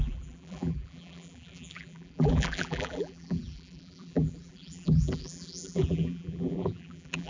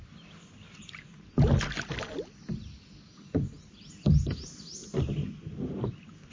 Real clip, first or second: second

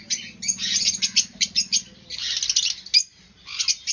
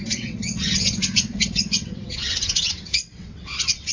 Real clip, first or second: first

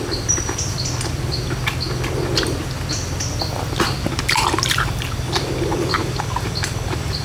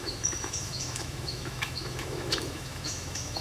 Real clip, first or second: first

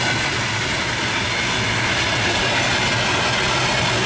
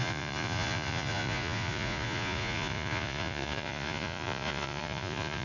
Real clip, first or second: first